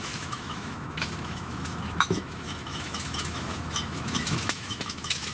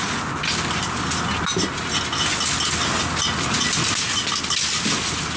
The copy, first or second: first